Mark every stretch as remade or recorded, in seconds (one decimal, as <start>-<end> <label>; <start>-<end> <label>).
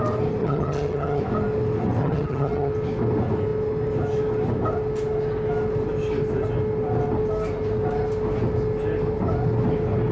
0.0-0.4 recorded; 0.4-1.2 remade; 1.2-2.0 recorded; 2.0-2.7 remade; 2.7-10.1 recorded